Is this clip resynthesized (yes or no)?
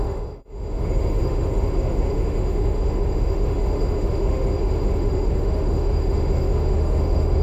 yes